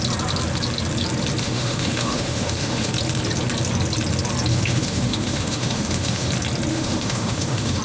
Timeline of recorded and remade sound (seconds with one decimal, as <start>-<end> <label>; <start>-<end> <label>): 0.0-1.4 recorded; 1.4-2.9 remade; 2.9-4.5 recorded; 4.5-6.3 remade; 6.3-6.7 recorded; 6.7-7.8 remade